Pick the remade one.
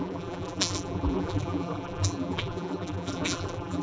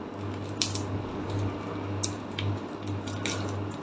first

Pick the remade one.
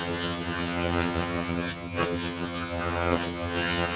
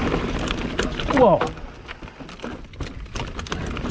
first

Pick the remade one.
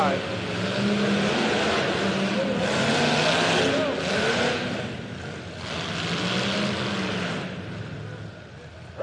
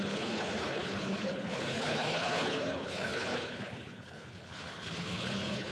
second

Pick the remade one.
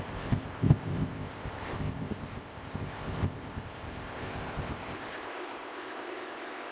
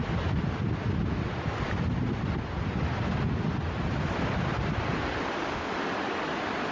first